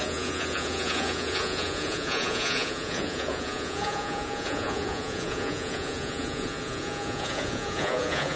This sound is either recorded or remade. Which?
remade